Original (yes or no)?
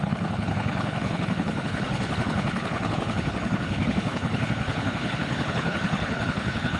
no